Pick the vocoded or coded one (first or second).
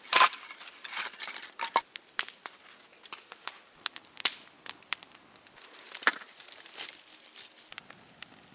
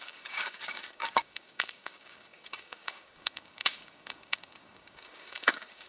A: second